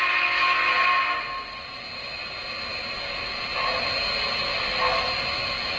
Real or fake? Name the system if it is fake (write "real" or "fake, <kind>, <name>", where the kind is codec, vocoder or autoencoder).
real